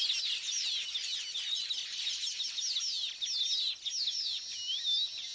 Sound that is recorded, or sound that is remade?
recorded